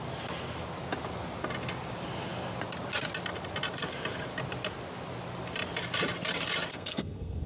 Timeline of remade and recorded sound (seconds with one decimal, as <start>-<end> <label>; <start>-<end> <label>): 0.0-6.7 recorded; 6.7-7.5 remade